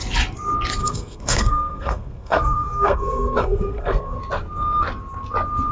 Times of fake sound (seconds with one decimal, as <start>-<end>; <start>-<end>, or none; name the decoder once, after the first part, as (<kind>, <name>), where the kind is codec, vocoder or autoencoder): 0.8-4.2 (codec, SNAC)